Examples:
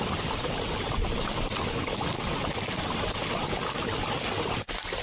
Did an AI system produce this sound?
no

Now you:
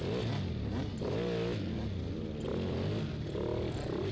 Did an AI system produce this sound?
no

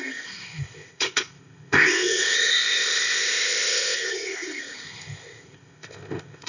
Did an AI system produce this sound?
yes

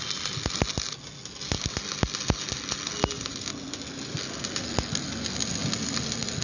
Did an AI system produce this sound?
no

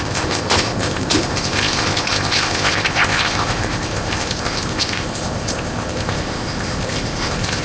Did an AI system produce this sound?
yes